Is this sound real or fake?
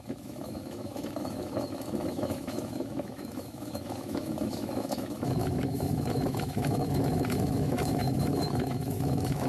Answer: fake